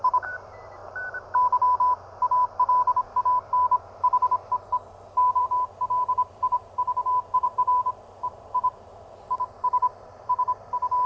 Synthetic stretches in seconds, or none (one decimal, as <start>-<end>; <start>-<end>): 0.0-0.8; 5.4-11.1